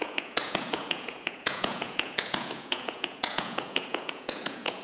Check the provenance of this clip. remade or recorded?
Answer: remade